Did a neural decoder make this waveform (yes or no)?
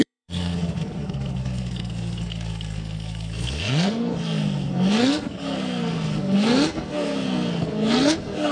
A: yes